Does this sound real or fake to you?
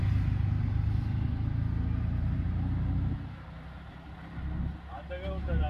real